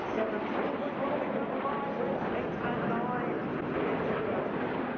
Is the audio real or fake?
real